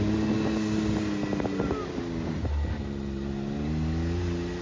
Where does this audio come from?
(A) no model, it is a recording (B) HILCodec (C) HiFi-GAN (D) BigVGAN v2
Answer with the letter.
A